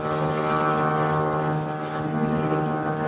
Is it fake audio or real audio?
real